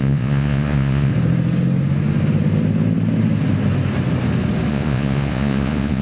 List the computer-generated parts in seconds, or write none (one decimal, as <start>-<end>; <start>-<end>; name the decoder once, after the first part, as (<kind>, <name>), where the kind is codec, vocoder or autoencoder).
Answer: 0.0-1.1 (vocoder, Vocos); 4.7-6.0